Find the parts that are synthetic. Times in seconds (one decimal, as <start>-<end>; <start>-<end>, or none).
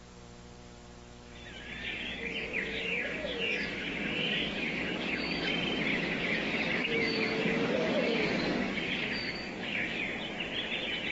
1.8-5.5; 5.9-10.0